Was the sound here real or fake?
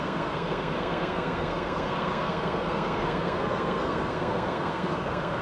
fake